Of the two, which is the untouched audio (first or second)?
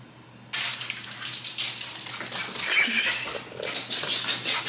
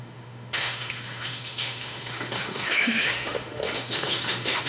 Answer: first